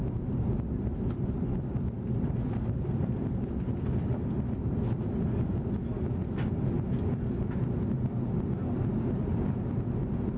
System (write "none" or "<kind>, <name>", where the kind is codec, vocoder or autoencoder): none